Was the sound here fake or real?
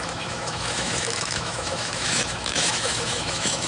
fake